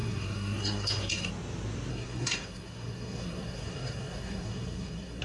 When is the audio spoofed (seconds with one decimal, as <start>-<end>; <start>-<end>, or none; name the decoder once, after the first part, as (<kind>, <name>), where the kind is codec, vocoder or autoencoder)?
0.0-1.3 (codec, SNAC); 1.9-5.2